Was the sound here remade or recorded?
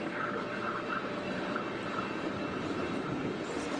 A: recorded